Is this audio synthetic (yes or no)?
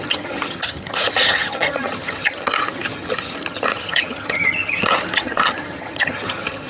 yes